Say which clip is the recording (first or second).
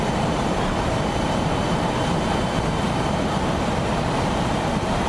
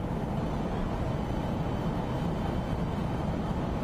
second